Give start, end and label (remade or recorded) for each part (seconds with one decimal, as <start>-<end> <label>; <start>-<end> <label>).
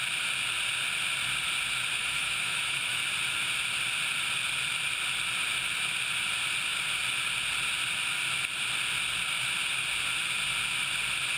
0.0-2.0 recorded; 2.0-3.0 remade; 3.0-11.4 recorded